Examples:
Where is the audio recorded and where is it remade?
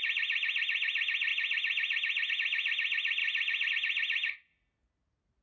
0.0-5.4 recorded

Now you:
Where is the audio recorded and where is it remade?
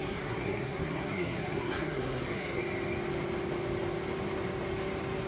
0.0-2.6 remade; 2.6-5.3 recorded